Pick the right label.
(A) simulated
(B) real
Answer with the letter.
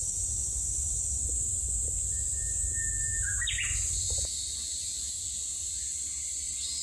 B